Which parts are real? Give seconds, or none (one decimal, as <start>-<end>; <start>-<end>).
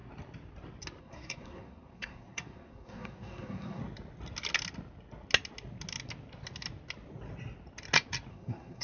0.0-1.0; 3.8-8.3